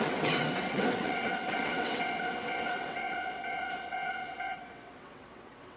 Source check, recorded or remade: remade